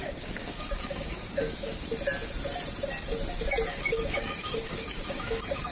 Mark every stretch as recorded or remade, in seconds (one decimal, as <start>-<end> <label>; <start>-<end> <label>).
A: 0.0-1.7 remade; 1.7-3.7 recorded; 3.7-5.7 remade